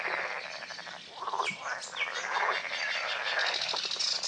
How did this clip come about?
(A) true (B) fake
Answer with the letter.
A